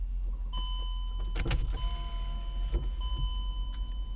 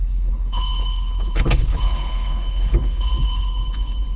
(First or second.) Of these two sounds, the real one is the first